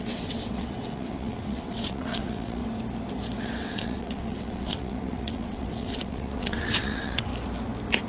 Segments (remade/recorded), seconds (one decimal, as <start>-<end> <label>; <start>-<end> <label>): 0.0-2.6 remade; 2.6-3.4 recorded; 3.4-7.3 remade; 7.3-8.1 recorded